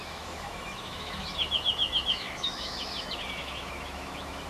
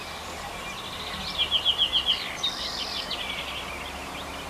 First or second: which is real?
second